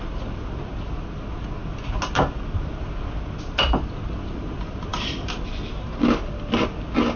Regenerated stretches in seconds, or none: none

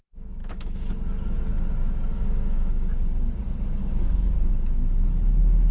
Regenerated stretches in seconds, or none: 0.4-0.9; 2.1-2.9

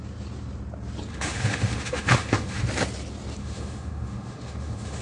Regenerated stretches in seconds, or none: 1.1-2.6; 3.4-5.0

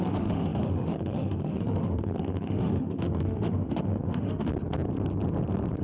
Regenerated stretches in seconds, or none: 0.0-4.5

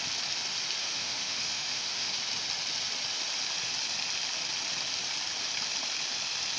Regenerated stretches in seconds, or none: 0.8-2.1